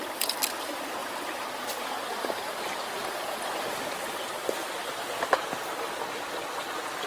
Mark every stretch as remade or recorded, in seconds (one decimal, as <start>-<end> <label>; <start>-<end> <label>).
0.0-1.0 recorded; 1.0-4.7 remade; 4.7-7.1 recorded